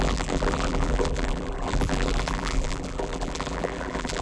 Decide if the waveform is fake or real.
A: fake